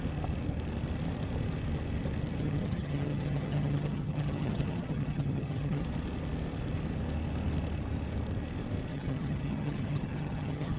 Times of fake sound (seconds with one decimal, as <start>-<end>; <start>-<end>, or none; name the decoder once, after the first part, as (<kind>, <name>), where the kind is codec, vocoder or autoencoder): 2.4-5.8 (vocoder, HiFi-GAN); 8.9-10.8